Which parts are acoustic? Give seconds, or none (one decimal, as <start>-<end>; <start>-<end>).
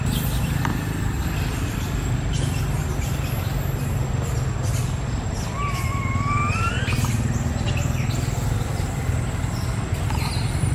0.0-10.7